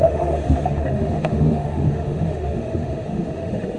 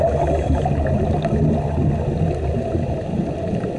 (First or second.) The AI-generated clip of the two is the first